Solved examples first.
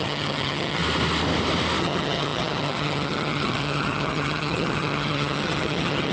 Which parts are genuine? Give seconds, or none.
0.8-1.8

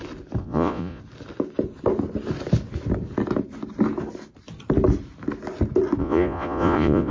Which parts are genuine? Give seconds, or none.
0.0-0.4; 1.0-6.0

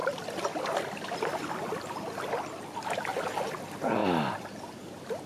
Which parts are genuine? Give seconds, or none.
1.5-5.3

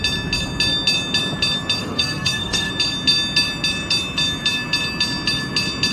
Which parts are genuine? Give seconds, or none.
0.0-1.8; 2.7-5.9

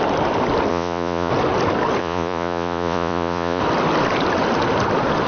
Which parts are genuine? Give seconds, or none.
0.0-0.7; 1.3-2.0; 3.6-5.3

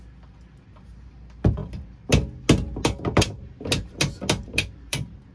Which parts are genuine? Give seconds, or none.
0.0-4.5

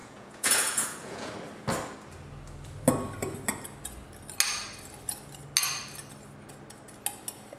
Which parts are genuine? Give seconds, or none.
1.3-7.6

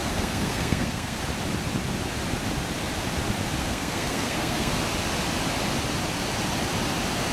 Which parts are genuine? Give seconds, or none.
1.2-3.6; 4.8-7.3